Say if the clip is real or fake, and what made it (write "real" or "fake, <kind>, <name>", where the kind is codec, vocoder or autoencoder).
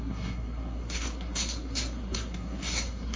fake, codec, SNAC